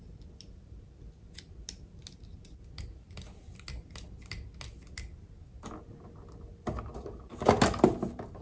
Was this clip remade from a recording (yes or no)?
no